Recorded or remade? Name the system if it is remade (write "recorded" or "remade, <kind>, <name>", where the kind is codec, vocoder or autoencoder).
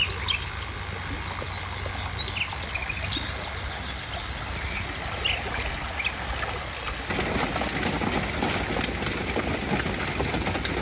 recorded